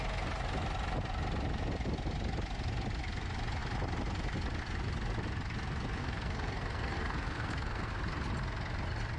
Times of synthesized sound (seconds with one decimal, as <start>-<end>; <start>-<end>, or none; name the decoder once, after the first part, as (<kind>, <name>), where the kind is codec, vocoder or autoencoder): 6.0-7.9 (codec, SNAC)